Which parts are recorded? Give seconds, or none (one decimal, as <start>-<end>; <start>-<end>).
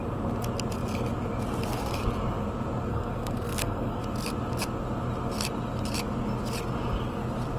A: 0.0-2.9; 4.0-7.6